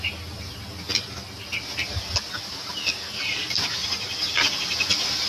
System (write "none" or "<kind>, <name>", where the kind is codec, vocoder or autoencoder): none